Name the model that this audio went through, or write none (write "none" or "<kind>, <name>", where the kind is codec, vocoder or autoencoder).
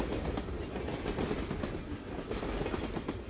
none